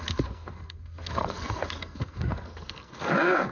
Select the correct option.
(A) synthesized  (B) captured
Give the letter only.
A